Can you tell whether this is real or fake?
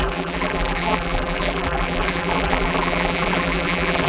fake